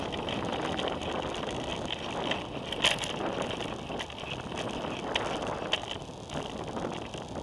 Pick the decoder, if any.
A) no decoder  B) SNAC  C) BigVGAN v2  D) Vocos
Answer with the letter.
A